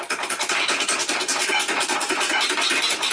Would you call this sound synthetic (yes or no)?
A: no